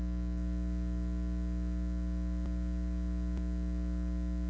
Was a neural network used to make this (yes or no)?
no